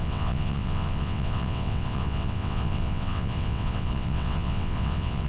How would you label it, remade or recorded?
remade